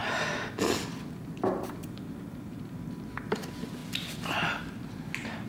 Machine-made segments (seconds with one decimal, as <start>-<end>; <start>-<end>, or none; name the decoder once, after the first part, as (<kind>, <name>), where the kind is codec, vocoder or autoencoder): none